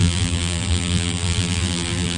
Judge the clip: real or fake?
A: fake